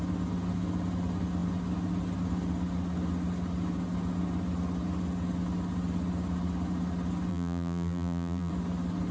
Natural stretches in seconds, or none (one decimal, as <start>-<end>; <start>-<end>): 0.0-7.3; 8.5-9.1